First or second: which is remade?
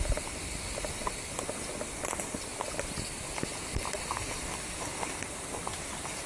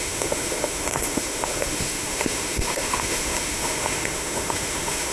second